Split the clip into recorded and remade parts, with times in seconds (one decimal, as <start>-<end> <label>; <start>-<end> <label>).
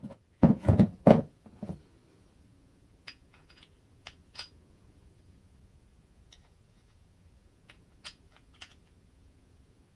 0.0-10.0 remade